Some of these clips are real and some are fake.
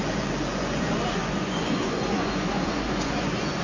fake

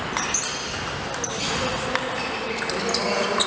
real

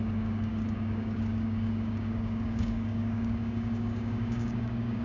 fake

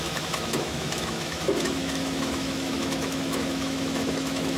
fake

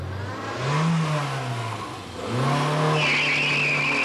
real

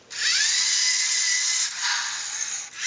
real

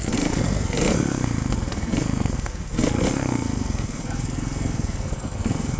fake